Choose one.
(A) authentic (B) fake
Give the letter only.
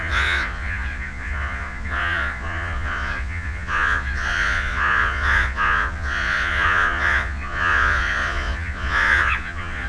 B